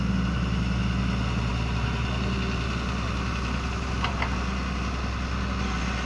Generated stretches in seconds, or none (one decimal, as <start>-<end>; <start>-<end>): none